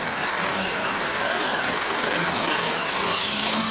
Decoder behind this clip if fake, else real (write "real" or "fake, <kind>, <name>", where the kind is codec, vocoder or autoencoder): fake, codec, DAC